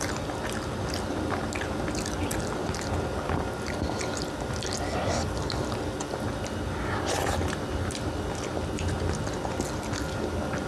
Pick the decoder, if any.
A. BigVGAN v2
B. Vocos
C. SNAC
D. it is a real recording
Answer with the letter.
D